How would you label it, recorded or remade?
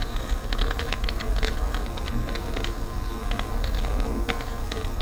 remade